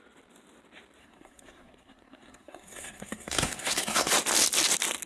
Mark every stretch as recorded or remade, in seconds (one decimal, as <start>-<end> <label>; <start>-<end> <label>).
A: 0.0-1.0 recorded; 1.0-4.1 remade; 4.1-5.1 recorded